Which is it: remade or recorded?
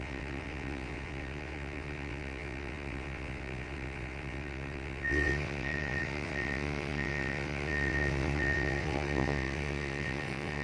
remade